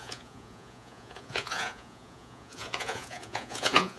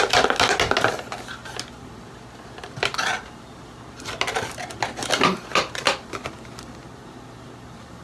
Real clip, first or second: second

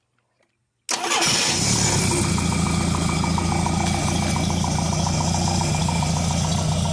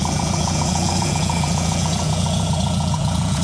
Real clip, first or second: first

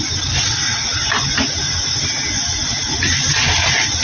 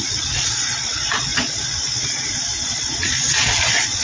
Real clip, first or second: first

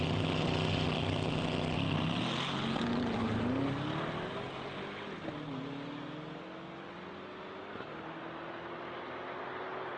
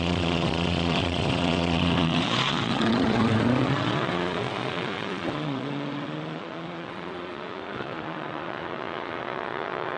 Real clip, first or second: first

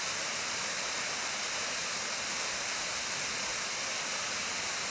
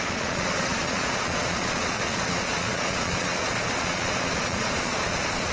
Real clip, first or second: first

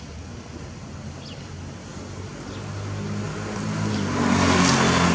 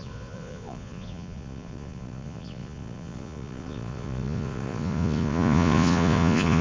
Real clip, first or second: first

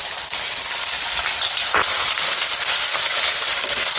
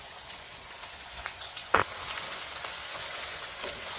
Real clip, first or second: first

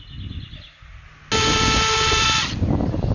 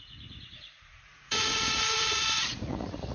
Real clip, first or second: first